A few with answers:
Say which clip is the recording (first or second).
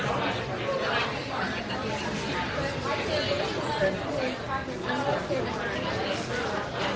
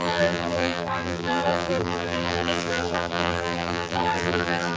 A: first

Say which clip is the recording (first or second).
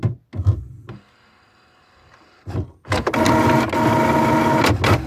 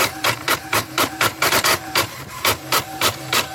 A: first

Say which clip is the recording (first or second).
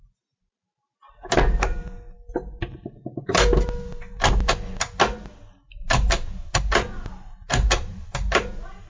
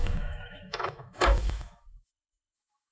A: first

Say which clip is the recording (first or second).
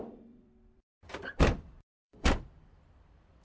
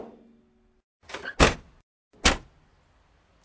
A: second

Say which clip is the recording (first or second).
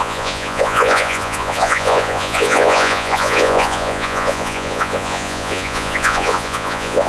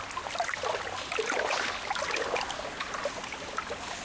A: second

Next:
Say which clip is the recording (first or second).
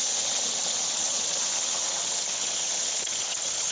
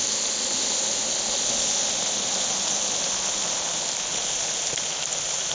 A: second